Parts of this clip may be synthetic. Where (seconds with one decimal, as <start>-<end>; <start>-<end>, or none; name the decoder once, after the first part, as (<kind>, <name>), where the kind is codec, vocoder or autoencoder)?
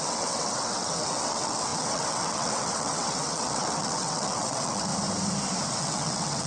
0.0-4.9 (vocoder, WaveNeXt); 5.7-6.5